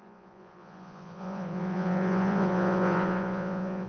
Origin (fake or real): fake